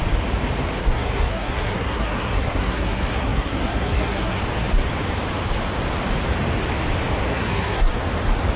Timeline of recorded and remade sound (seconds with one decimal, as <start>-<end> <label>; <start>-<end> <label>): 0.0-0.8 recorded; 0.8-4.4 remade; 4.4-7.3 recorded; 7.3-8.0 remade; 8.0-8.6 recorded